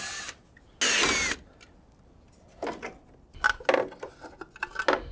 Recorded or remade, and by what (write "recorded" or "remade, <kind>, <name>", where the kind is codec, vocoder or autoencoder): recorded